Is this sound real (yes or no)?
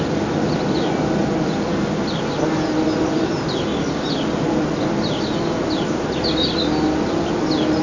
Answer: yes